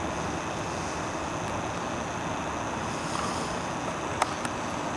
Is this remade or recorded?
recorded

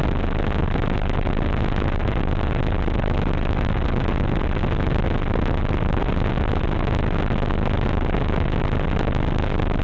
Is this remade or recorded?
recorded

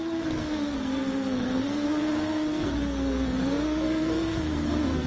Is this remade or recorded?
remade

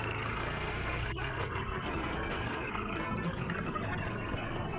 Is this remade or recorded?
remade